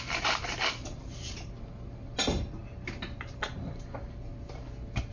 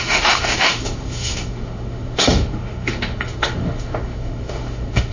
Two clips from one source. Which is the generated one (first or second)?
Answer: second